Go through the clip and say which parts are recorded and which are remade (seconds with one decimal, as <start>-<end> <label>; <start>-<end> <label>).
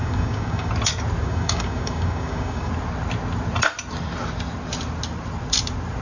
0.0-0.7 remade; 0.7-1.2 recorded; 1.2-2.7 remade; 2.7-6.0 recorded